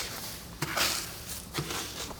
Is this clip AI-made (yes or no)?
yes